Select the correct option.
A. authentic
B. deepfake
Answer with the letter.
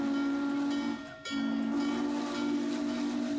A